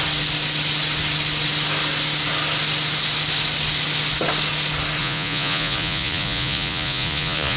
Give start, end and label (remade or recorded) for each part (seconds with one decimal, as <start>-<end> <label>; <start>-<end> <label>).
0.0-5.0 recorded; 5.0-7.6 remade